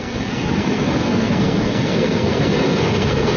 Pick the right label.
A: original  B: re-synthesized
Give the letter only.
B